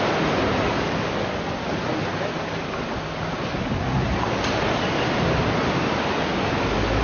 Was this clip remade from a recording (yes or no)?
no